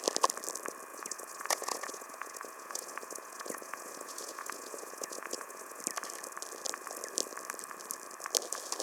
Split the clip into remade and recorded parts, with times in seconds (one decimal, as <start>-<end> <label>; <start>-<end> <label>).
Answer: 0.0-0.9 recorded; 0.9-5.8 remade; 5.8-8.8 recorded